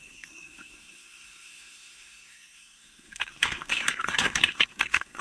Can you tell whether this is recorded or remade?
remade